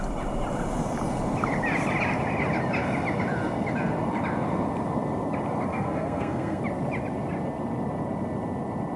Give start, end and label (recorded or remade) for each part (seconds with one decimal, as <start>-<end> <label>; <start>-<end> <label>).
0.0-5.7 recorded; 5.7-6.6 remade; 6.6-9.0 recorded

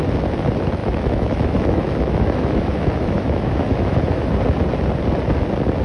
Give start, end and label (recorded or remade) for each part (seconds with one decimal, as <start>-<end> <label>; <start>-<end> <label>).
0.0-0.8 recorded; 0.8-4.3 remade; 4.3-5.8 recorded

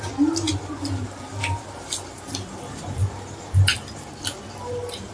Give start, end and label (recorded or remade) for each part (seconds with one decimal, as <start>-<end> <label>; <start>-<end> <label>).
0.0-1.4 recorded; 1.4-3.0 remade; 3.0-3.7 recorded; 3.7-5.1 remade

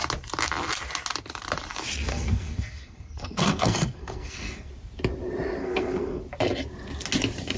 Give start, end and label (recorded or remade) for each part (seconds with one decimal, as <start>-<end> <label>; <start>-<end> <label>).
0.0-2.1 recorded; 2.1-4.7 remade; 4.7-5.6 recorded; 5.6-6.2 remade; 6.2-7.6 recorded

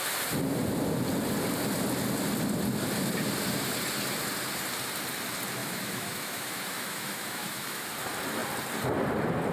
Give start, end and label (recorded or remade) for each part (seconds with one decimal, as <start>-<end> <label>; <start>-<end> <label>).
0.0-5.6 recorded; 5.6-7.8 remade; 7.8-9.5 recorded

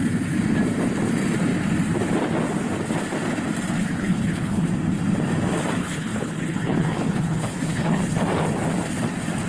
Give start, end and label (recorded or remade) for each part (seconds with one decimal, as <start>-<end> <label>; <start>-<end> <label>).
0.0-3.8 recorded; 3.8-4.7 remade; 4.7-5.8 recorded; 5.8-8.0 remade; 8.0-9.5 recorded